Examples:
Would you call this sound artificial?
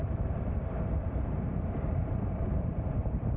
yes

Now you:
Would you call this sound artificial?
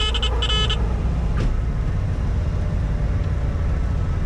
no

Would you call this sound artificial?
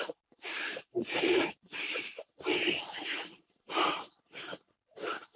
yes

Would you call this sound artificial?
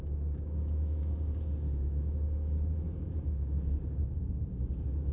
yes